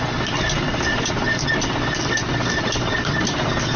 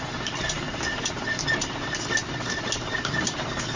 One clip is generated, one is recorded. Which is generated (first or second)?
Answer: second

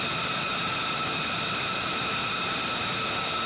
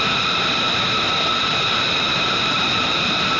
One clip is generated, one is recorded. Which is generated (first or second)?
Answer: second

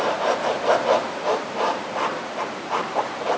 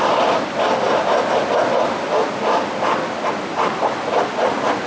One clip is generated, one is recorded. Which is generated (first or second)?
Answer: first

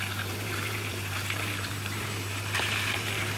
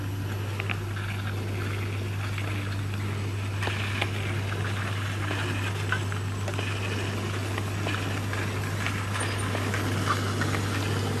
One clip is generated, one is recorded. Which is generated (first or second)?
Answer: first